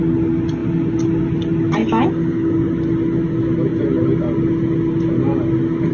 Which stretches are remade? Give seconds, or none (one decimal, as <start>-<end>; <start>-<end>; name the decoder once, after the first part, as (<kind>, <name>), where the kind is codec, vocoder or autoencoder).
1.8-2.7 (codec, DAC)